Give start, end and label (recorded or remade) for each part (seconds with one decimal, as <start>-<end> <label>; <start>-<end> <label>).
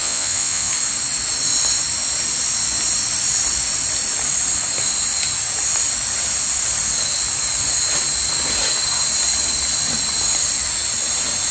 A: 0.0-0.7 remade; 0.7-11.5 recorded